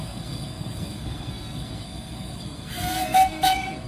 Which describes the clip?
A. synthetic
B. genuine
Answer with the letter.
A